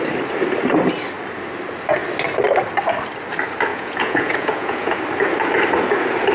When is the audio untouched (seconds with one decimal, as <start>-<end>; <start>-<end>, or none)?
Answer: 0.0-3.7; 5.0-6.3